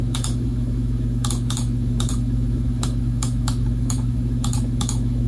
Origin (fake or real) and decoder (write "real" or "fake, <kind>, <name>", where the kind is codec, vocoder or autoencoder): fake, autoencoder, DAC-VAE